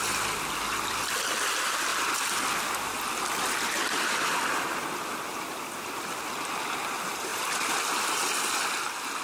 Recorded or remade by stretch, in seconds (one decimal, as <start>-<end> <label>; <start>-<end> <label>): 0.0-1.9 recorded; 1.9-5.0 remade; 5.0-7.3 recorded; 7.3-7.8 remade; 7.8-9.2 recorded